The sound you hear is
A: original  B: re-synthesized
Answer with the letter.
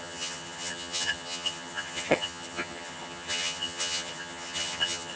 B